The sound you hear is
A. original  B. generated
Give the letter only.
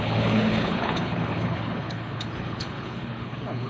B